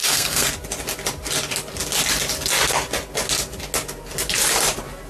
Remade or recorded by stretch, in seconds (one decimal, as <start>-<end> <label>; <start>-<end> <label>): 0.0-0.5 remade; 0.5-5.1 recorded